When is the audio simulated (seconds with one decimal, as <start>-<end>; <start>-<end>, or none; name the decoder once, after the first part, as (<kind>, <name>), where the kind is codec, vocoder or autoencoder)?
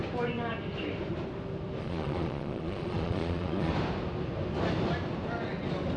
1.8-3.7 (vocoder, Vocos)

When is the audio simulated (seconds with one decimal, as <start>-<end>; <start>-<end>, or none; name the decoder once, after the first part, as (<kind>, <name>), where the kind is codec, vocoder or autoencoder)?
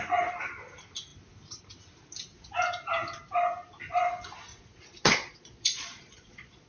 4.5-6.7 (vocoder, Vocos)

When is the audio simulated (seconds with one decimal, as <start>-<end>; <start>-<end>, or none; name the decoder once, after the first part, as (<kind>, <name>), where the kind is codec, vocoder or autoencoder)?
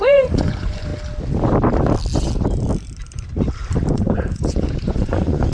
0.0-0.9 (vocoder, Vocos); 3.9-5.5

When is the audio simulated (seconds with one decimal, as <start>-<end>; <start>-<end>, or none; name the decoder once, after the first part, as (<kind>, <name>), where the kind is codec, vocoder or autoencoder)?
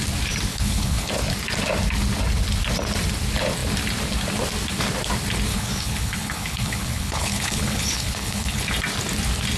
0.5-1.1 (codec, HILCodec); 5.5-8.6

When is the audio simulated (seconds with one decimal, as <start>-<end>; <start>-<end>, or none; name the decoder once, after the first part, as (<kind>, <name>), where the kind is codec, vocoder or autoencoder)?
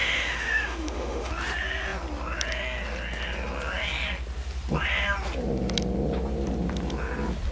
0.0-1.3 (autoencoder, DAC-VAE)